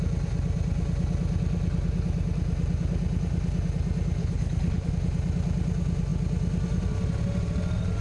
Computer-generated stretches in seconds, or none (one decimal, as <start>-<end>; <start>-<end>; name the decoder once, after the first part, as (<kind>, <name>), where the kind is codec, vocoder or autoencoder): 4.2-4.9 (codec, HILCodec)